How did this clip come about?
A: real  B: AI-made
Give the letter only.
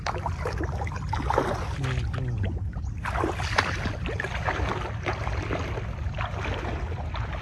A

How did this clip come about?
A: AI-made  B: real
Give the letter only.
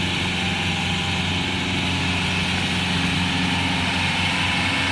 B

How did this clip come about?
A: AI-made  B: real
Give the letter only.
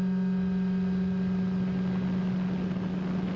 B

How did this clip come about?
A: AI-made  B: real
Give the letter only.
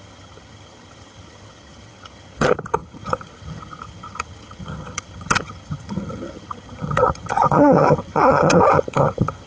A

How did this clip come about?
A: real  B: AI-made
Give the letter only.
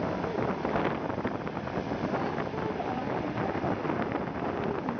A